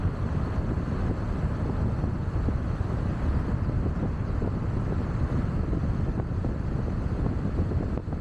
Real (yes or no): yes